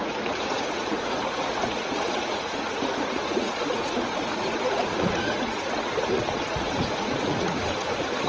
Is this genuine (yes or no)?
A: no